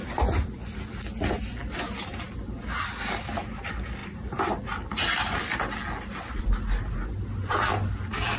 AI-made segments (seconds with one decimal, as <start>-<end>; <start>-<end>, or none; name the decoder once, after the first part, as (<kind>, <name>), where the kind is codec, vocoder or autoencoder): none